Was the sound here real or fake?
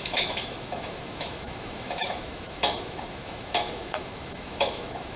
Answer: fake